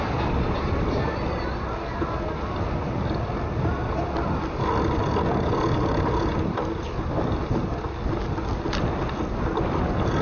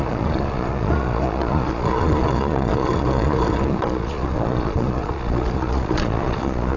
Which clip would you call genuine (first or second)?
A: first